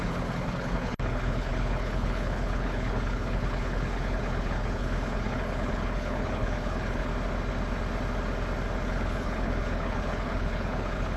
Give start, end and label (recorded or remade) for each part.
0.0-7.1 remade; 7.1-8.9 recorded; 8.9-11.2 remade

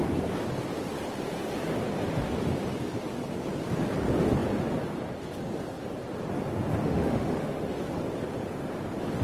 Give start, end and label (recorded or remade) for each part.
0.0-6.8 recorded; 6.8-7.7 remade; 7.7-9.2 recorded